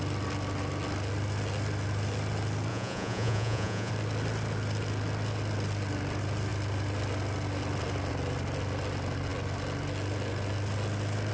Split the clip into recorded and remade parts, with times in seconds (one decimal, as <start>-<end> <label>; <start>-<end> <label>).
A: 0.0-2.7 recorded; 2.7-3.9 remade; 3.9-11.3 recorded